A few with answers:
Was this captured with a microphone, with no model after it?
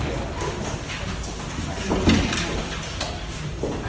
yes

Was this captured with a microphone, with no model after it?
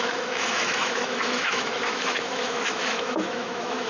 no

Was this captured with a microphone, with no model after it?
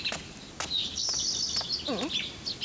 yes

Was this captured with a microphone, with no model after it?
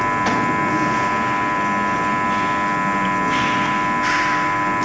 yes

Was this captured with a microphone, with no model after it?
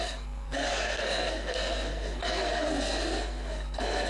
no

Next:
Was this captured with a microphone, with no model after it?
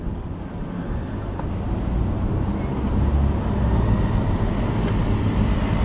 yes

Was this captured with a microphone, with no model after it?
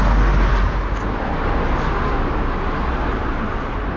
yes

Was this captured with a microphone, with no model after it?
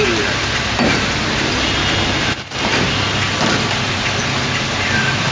yes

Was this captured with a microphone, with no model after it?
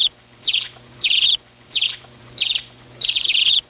no